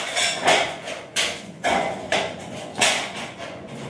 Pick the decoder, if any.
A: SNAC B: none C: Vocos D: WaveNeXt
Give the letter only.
C